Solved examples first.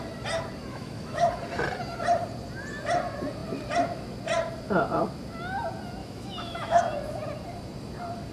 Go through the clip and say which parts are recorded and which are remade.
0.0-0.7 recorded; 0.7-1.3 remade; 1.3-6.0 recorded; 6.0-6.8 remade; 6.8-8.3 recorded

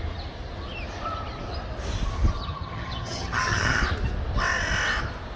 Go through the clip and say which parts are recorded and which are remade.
0.0-2.4 recorded; 2.4-3.8 remade; 3.8-5.4 recorded